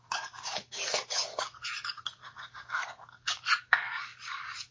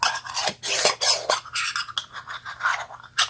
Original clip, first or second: second